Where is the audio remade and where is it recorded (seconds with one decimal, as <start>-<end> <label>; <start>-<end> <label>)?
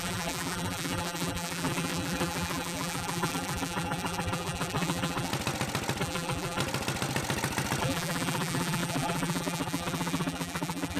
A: 0.0-5.3 remade; 5.3-6.0 recorded; 6.0-6.6 remade; 6.6-7.8 recorded; 7.8-11.0 remade